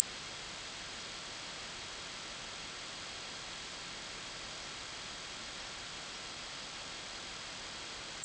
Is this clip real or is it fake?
real